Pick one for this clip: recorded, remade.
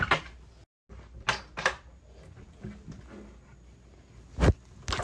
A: recorded